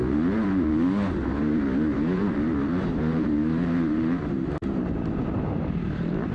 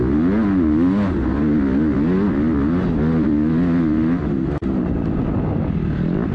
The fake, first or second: first